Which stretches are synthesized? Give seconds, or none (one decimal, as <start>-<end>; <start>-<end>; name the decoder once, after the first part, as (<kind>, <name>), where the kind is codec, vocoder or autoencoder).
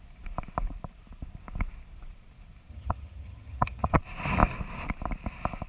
2.7-4.0 (vocoder, HiFi-GAN)